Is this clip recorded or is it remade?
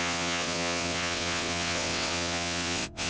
remade